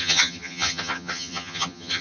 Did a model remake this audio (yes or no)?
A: yes